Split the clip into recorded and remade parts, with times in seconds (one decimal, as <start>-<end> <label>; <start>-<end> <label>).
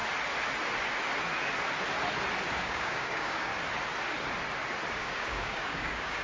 0.0-2.5 recorded; 2.5-3.5 remade; 3.5-4.9 recorded; 4.9-6.2 remade